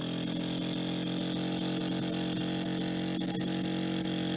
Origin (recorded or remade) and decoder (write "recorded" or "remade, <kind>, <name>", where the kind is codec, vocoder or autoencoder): recorded